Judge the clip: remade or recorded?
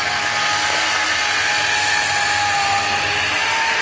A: recorded